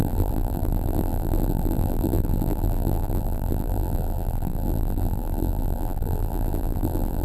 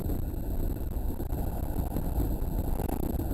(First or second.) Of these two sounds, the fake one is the first